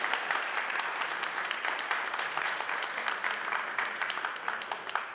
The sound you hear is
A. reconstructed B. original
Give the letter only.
A